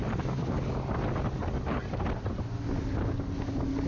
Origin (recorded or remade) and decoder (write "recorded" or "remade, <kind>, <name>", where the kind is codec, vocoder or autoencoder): recorded